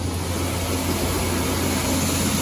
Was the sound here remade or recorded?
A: recorded